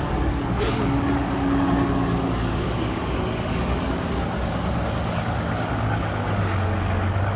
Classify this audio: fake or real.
fake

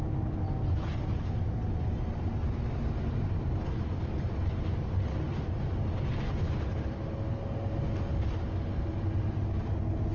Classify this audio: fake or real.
real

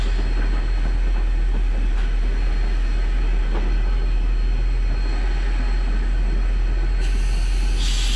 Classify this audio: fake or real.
real